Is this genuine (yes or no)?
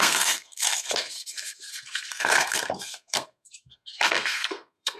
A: no